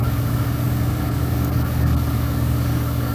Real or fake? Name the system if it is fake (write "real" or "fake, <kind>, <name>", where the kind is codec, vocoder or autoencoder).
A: fake, codec, DAC